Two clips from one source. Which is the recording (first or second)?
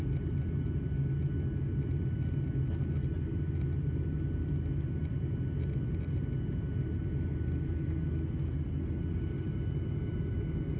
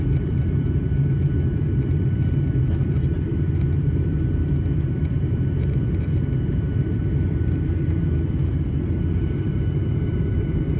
first